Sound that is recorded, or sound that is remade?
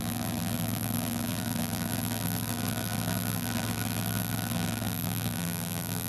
remade